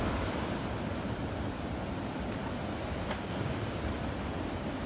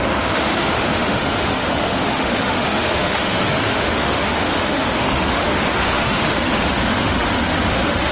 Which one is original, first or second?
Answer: first